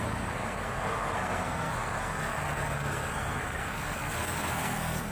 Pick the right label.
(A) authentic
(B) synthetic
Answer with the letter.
B